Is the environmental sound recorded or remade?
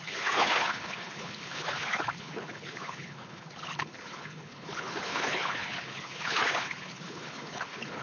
remade